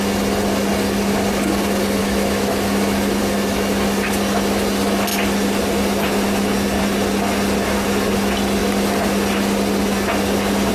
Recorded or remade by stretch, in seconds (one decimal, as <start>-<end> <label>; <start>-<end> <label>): 0.0-2.0 recorded; 2.0-3.2 remade; 3.2-10.7 recorded